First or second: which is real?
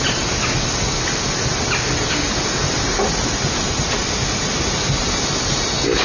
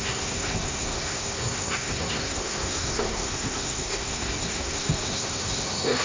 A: first